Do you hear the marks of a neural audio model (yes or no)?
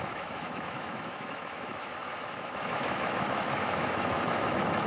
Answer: yes